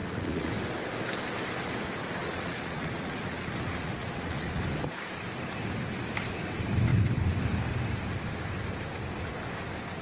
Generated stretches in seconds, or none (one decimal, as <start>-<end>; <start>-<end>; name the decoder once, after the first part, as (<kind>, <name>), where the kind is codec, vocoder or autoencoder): 0.0-0.5 (vocoder, Vocos); 2.2-4.6